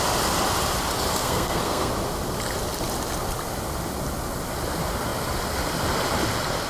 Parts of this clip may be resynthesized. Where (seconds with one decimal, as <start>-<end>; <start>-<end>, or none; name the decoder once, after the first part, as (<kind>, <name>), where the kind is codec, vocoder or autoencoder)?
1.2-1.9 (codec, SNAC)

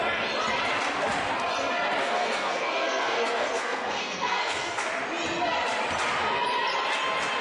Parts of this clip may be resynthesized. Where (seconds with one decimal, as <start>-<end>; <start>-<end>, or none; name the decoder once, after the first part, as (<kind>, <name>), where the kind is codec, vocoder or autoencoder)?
2.0-4.9 (codec, SNAC)

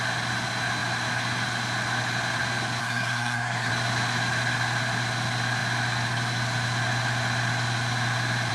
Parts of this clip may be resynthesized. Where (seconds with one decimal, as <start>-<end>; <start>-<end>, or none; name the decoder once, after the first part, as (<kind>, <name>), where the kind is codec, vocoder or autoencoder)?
2.8-3.7 (codec, SNAC)